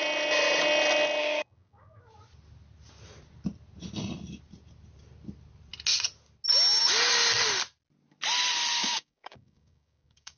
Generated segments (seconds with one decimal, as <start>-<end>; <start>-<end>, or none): 1.2-2.0; 8.8-10.4